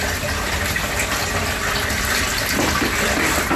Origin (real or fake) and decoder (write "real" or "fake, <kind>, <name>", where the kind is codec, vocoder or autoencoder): real